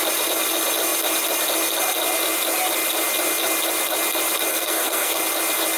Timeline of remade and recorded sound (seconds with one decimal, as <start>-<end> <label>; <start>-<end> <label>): 0.0-4.5 recorded; 4.5-5.2 remade; 5.2-5.8 recorded